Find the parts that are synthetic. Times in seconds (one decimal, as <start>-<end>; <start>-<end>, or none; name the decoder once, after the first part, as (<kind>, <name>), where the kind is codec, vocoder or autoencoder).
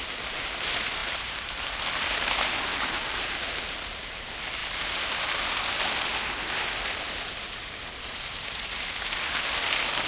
1.0-1.8 (vocoder, BigVGAN v2); 2.7-3.8